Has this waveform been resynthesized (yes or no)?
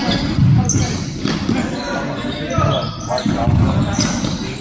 no